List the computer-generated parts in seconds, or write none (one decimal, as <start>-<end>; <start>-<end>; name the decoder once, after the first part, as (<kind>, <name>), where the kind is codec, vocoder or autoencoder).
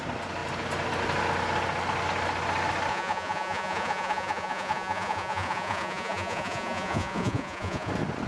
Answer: 2.9-7.9 (vocoder, Vocos)